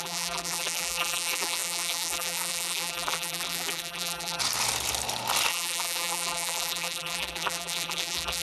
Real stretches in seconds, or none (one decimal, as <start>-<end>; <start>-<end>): 4.4-5.5